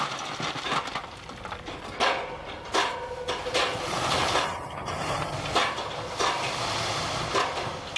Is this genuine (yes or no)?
yes